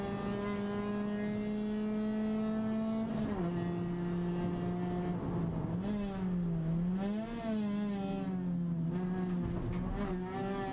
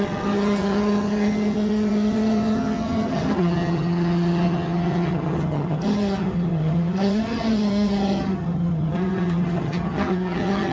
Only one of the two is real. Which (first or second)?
first